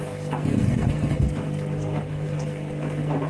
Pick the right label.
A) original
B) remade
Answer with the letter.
B